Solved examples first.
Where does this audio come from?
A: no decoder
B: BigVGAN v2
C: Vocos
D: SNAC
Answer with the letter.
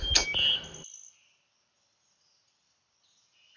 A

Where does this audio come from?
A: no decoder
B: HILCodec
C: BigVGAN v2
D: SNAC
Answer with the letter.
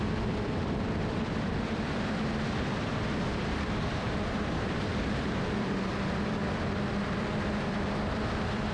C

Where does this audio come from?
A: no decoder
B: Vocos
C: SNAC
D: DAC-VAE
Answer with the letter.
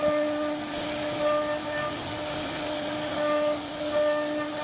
A